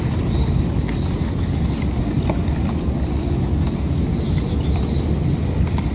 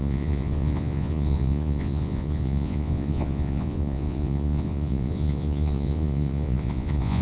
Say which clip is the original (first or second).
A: first